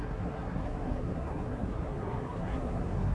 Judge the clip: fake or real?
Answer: fake